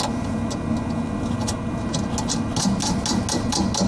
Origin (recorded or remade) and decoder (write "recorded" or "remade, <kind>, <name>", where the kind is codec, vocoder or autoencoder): recorded